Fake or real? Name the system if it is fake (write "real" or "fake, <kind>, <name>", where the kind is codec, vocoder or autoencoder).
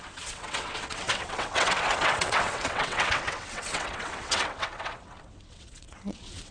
fake, vocoder, WaveNeXt